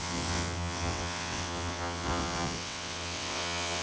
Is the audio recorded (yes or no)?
no